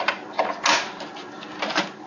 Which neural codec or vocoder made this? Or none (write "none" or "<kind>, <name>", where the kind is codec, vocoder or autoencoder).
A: none